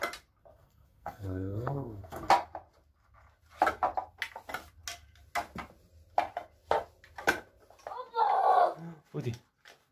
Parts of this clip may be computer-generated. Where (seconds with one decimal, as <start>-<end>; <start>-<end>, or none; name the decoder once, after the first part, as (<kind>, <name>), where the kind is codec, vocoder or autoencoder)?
0.5-2.3 (codec, SNAC)